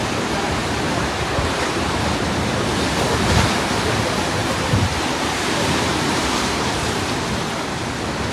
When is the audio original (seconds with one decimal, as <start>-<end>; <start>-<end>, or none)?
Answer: 0.0-0.6; 2.3-4.4; 7.0-8.3